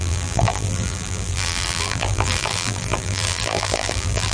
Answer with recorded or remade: remade